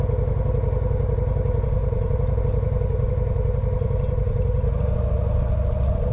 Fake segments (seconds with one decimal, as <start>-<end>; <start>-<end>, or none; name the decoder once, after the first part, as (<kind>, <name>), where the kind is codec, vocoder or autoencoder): 1.8-2.4 (vocoder, BigVGAN v2)

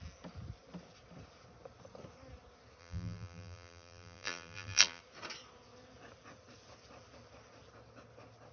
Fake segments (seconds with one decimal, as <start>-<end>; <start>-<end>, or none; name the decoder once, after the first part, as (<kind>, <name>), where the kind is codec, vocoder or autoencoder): 2.8-5.0 (vocoder, BigVGAN v2)

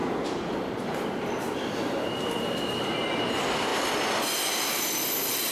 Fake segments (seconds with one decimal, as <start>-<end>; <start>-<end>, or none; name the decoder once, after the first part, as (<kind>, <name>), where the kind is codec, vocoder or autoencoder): 0.0-3.7 (vocoder, BigVGAN v2)